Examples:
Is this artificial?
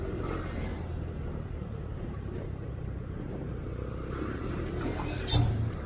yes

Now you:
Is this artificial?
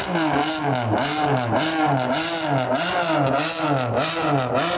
no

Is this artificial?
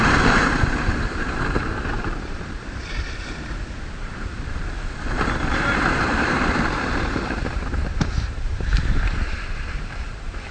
yes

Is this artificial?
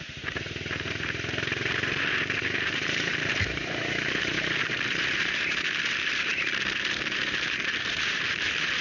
yes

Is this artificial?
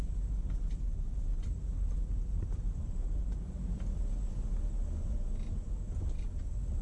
no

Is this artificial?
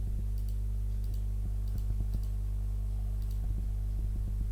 no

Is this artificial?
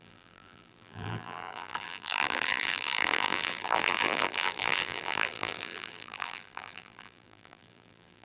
yes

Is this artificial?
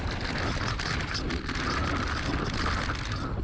no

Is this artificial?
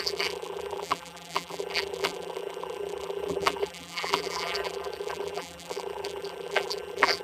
yes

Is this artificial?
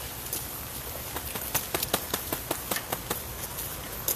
no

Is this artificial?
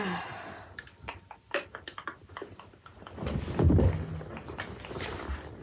no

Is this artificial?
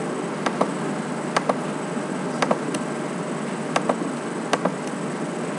no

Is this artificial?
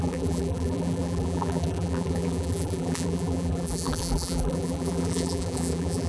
yes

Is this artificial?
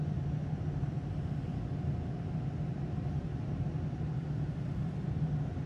yes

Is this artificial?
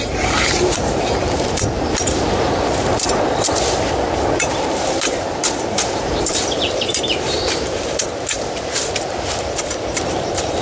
yes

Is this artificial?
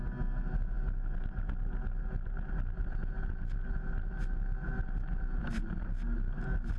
no